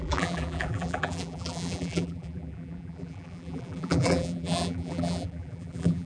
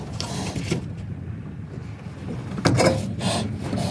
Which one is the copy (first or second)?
first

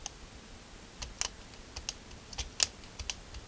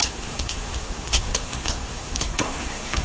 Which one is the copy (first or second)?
second